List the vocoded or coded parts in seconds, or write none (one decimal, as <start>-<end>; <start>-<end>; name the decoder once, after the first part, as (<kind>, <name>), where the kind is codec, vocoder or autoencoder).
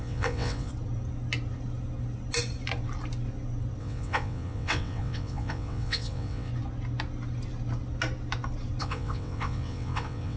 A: 0.0-0.7 (vocoder, WaveNeXt); 3.8-6.5; 8.8-10.4